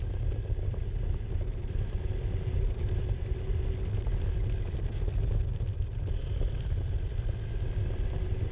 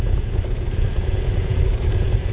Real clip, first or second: first